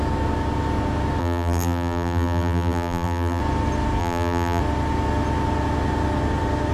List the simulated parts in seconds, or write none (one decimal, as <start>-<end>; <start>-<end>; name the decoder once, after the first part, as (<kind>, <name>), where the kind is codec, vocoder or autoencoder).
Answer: 1.2-3.4 (vocoder, BigVGAN v2); 4.0-4.6